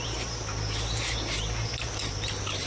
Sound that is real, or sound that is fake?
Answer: real